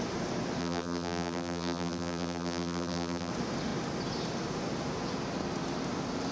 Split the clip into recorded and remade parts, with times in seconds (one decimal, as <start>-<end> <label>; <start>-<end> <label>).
0.0-0.6 recorded; 0.6-3.3 remade; 3.3-6.3 recorded